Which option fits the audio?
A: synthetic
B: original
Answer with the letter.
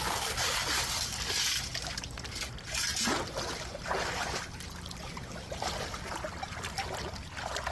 B